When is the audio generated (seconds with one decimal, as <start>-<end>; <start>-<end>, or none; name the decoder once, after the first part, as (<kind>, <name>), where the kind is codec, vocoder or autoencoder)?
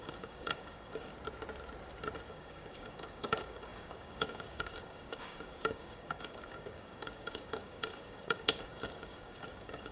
0.0-1.1 (codec, DAC); 2.3-9.9